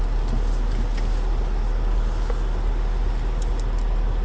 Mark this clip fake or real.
real